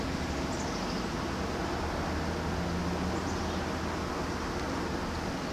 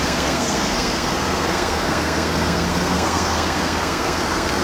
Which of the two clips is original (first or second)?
first